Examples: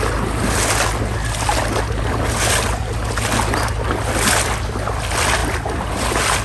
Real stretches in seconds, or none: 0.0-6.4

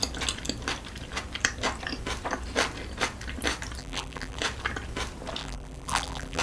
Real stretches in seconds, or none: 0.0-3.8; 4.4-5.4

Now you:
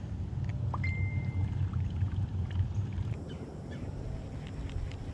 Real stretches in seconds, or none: 0.0-0.5; 3.5-5.1